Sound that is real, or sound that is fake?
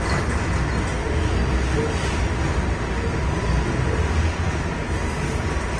real